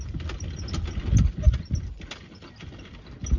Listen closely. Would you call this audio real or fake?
real